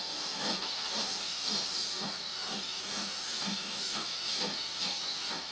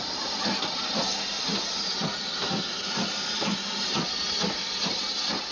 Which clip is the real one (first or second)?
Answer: second